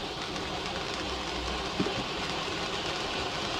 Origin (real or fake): real